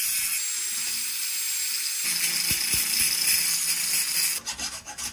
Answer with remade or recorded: recorded